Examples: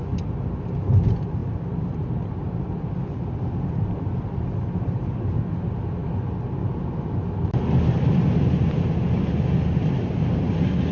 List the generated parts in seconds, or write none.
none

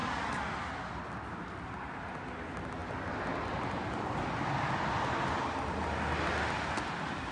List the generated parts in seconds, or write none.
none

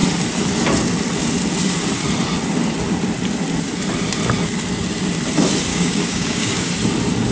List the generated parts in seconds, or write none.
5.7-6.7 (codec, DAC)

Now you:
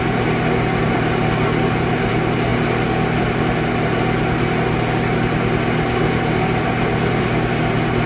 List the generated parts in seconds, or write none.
0.8-2.1 (vocoder, BigVGAN v2)

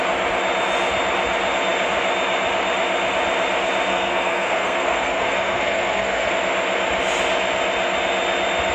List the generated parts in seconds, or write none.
3.9-6.3 (codec, SNAC)

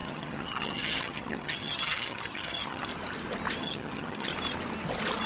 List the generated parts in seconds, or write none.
0.0-2.9 (vocoder, HiFi-GAN); 3.6-4.3

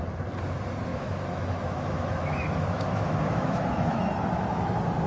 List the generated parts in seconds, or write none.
0.9-4.0 (autoencoder, DAC-VAE)

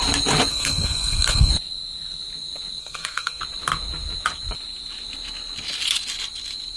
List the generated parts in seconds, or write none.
0.5-1.5 (codec, SNAC); 2.8-3.4